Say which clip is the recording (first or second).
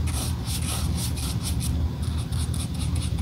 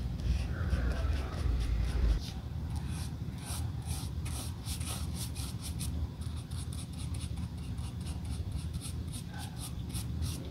first